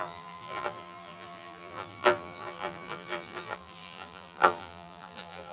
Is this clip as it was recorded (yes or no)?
no